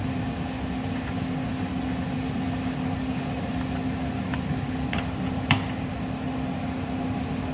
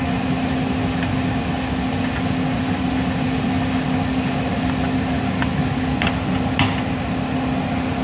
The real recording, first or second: second